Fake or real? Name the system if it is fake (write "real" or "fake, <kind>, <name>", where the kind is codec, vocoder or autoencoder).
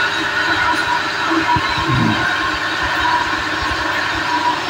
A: real